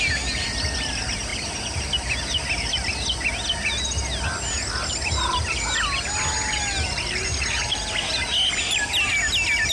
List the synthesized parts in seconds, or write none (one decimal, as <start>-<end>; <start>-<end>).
none